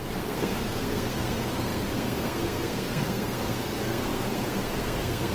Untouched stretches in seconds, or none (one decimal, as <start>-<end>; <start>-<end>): none